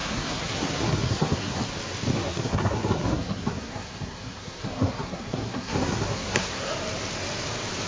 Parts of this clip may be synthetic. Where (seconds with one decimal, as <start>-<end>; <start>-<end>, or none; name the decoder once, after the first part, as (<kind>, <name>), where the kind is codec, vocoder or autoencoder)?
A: 0.0-1.6 (codec, SNAC); 2.1-6.7